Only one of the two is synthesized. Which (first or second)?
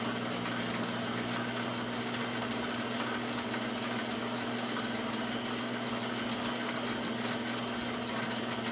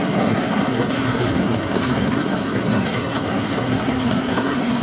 second